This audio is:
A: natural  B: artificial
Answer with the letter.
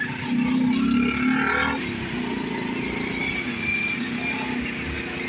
A